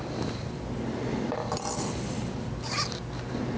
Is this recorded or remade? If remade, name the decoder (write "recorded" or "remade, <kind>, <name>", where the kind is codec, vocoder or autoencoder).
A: recorded